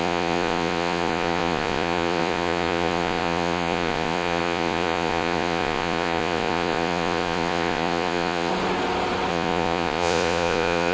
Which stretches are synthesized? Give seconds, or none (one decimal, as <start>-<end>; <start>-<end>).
0.0-8.5; 9.3-10.9